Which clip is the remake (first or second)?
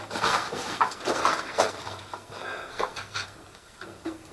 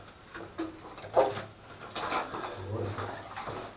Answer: first